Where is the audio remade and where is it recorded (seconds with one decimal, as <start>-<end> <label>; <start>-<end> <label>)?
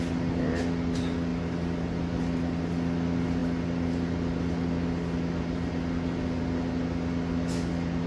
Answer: 0.0-8.1 recorded